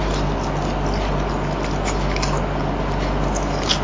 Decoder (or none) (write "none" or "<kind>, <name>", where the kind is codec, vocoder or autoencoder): none